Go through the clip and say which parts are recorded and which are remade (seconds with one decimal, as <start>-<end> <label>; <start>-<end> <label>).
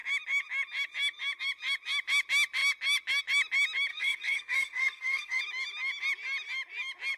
0.0-3.9 recorded; 3.9-5.4 remade; 5.4-7.2 recorded